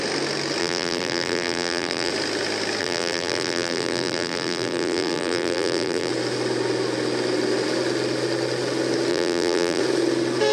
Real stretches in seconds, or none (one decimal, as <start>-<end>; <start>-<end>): 0.0-0.6; 2.1-2.8; 6.1-9.1; 9.8-10.5